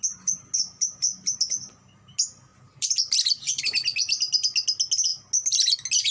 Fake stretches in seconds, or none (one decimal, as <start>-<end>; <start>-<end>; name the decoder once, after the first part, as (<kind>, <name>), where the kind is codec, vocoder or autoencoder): 2.5-3.6 (vocoder, BigVGAN v2)